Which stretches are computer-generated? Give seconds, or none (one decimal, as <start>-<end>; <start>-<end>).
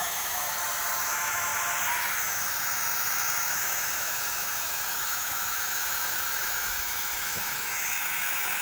0.0-0.5; 1.1-1.5; 2.2-8.6